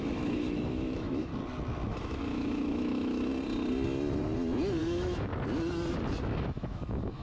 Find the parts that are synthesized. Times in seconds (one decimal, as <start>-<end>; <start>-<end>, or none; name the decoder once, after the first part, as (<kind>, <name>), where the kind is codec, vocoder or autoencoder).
0.0-1.3 (autoencoder, DAC-VAE); 2.0-3.3; 4.8-5.3; 6.2-7.2